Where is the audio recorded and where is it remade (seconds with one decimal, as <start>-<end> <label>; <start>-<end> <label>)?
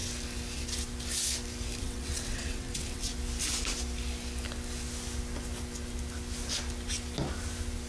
0.0-1.8 recorded; 1.8-3.1 remade; 3.1-7.9 recorded